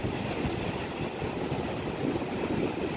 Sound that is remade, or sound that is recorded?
recorded